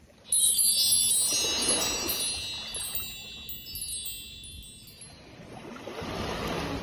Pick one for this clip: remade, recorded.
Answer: recorded